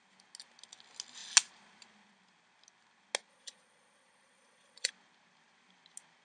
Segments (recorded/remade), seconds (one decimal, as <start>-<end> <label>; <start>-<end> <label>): 0.0-3.3 recorded; 3.3-4.9 remade; 4.9-6.2 recorded

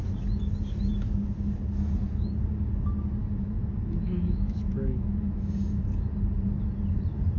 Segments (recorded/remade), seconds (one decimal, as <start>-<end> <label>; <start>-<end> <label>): 0.0-3.2 recorded; 3.2-5.3 remade; 5.3-7.4 recorded

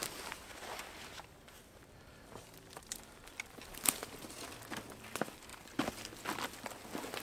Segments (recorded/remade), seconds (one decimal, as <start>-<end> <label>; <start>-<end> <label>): 0.0-0.5 remade; 0.5-1.6 recorded; 1.6-5.5 remade; 5.5-7.2 recorded

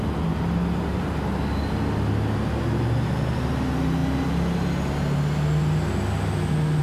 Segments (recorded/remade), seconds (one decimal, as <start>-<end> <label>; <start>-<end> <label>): 0.0-6.8 recorded

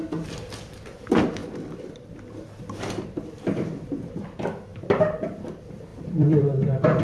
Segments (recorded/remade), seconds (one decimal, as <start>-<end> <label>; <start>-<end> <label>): 0.0-1.4 recorded; 1.4-2.1 remade; 2.1-4.7 recorded; 4.7-5.4 remade; 5.4-5.9 recorded; 5.9-7.0 remade

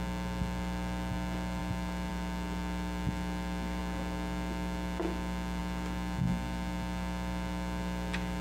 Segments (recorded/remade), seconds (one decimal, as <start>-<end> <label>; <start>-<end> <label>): 0.0-8.4 recorded

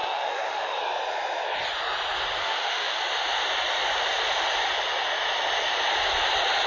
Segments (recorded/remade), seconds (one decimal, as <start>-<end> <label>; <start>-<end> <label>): 0.0-0.8 remade; 0.8-2.4 recorded; 2.4-3.0 remade; 3.0-6.7 recorded

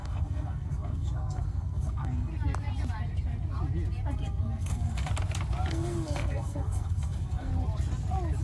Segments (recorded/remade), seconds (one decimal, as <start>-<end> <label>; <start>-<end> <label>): 0.0-2.3 remade; 2.3-4.1 recorded; 4.1-5.1 remade; 5.1-5.7 recorded; 5.7-7.5 remade; 7.5-8.4 recorded